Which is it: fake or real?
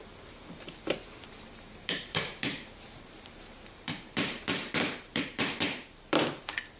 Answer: fake